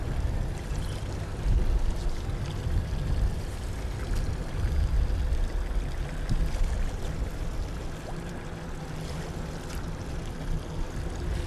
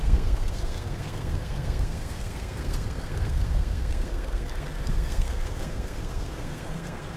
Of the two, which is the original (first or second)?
first